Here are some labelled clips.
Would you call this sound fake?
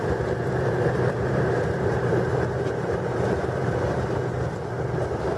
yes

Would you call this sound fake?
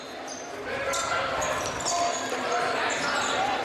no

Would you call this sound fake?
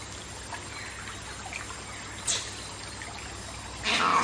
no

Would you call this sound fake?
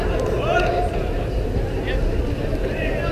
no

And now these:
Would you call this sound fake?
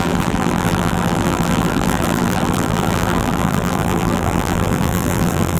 yes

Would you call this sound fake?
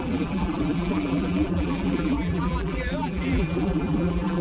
yes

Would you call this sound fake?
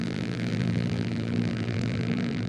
yes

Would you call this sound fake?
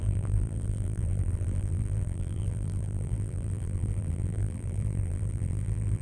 yes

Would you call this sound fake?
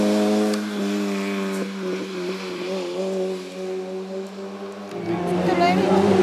no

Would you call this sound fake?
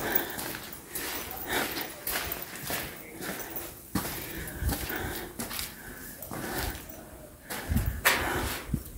no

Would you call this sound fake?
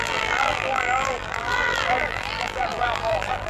yes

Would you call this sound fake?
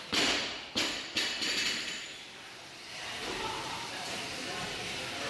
yes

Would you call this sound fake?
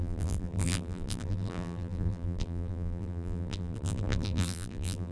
yes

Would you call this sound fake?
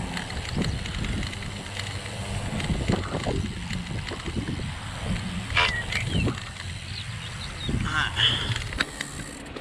no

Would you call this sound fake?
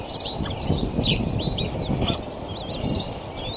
yes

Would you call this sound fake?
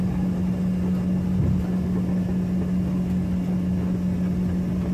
no